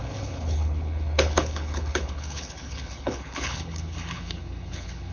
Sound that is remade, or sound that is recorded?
remade